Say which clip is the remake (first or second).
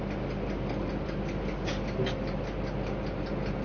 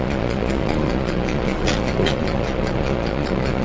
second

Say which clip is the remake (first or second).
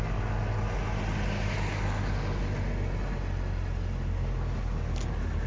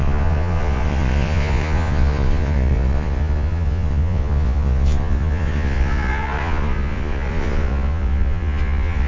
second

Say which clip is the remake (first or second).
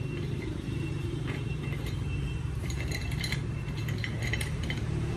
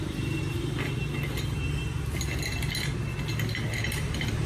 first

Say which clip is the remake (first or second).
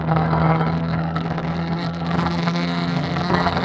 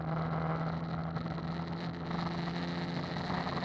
first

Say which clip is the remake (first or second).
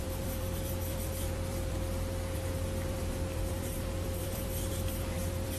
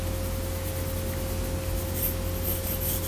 first